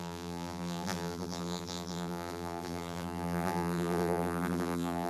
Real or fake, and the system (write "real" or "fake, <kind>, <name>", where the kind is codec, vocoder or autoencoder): fake, vocoder, BigVGAN v2